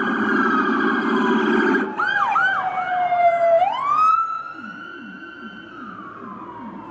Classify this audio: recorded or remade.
recorded